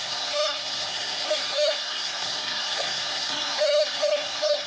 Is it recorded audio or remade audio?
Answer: remade